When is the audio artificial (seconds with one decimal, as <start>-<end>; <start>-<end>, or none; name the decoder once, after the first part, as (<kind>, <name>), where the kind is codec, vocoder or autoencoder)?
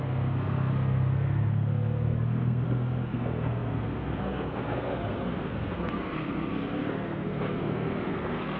0.0-8.6 (codec, SNAC)